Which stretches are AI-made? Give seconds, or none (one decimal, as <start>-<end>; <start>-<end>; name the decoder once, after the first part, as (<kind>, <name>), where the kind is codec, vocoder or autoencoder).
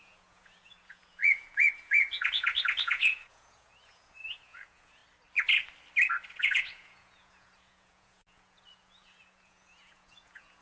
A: 0.0-5.0 (vocoder, Vocos); 6.4-10.6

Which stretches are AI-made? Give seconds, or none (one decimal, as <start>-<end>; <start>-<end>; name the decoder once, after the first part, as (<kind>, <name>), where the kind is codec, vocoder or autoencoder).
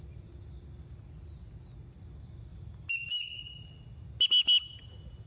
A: 2.5-3.7 (vocoder, BigVGAN v2)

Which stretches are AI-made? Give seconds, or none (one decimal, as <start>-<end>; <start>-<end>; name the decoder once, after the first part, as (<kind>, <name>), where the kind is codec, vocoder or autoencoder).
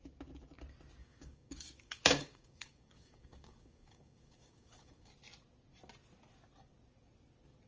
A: 1.0-5.1 (codec, DAC)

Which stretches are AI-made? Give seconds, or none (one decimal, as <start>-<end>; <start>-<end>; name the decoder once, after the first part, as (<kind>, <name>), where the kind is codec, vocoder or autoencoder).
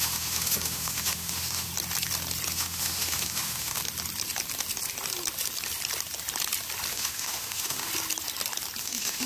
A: 0.0-1.7 (autoencoder, DAC-VAE); 2.5-3.8; 6.9-7.9; 8.8-9.3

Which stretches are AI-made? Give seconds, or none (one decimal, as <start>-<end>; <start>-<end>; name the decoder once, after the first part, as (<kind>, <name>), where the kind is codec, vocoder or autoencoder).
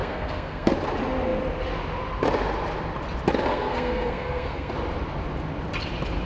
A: 0.0-0.7 (codec, SNAC); 3.5-4.7